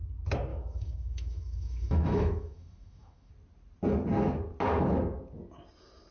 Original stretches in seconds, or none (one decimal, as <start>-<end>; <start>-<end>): 0.0-0.5; 3.3-6.1